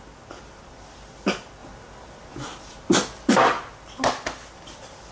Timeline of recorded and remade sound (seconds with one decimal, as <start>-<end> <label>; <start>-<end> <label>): 0.0-5.1 recorded

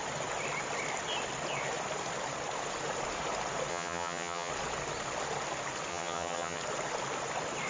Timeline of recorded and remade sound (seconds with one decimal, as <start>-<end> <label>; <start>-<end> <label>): 0.0-3.7 recorded; 3.7-4.5 remade; 4.5-5.9 recorded; 5.9-6.6 remade; 6.6-7.7 recorded